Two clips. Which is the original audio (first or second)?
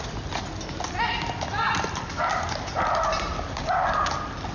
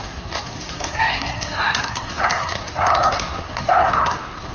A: first